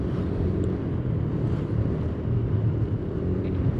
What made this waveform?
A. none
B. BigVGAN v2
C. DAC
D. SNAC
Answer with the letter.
A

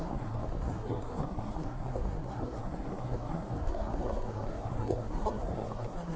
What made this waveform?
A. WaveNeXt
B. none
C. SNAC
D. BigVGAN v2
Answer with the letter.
C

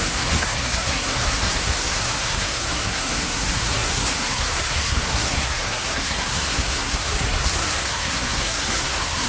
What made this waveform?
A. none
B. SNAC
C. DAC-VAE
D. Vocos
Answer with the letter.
B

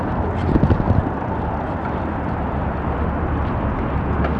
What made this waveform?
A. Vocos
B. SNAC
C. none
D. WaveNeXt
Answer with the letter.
C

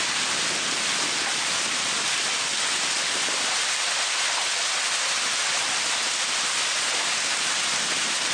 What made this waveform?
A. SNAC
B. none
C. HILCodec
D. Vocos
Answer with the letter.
B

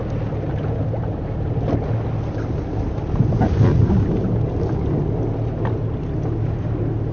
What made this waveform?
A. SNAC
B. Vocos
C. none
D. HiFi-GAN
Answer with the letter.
C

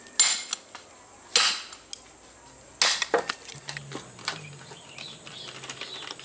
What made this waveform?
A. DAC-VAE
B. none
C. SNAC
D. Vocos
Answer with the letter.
B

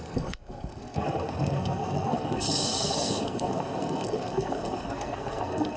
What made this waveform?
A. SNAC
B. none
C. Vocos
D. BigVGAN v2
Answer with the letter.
A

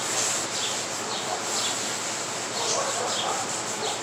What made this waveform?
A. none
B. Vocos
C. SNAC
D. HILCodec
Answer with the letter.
A